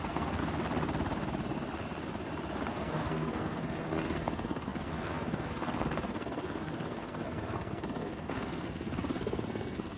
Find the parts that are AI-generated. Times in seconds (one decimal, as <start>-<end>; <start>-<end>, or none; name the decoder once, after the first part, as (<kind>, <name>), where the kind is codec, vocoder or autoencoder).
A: 0.0-0.4 (codec, SNAC); 2.7-10.0